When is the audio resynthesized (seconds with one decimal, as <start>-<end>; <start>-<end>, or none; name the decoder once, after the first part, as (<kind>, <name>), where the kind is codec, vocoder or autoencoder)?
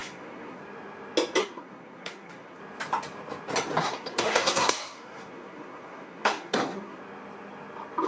0.0-0.6 (codec, SNAC); 1.4-2.6; 3.8-7.0